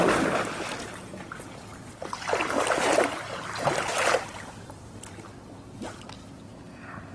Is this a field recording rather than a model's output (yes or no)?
yes